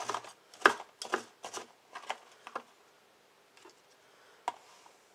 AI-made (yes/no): no